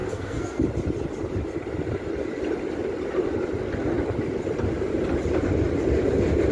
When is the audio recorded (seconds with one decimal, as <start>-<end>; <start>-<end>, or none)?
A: 0.6-6.5